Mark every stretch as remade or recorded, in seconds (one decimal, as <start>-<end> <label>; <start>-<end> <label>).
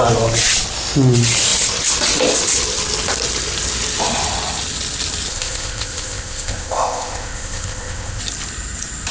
0.0-5.3 recorded; 5.3-8.2 remade; 8.2-9.1 recorded